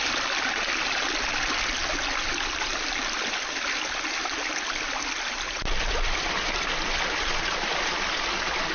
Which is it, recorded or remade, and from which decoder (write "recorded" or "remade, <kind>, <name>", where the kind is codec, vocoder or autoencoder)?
recorded